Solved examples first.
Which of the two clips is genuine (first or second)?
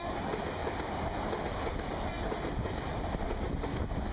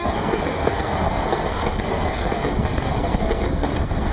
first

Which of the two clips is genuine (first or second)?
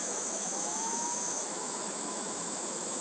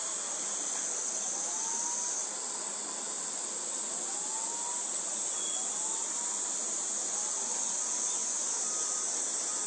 second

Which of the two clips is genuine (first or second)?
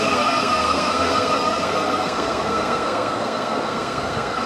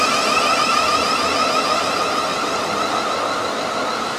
second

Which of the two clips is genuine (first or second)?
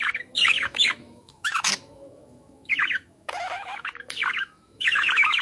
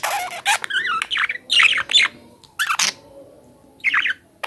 second